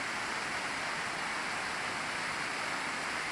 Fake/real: real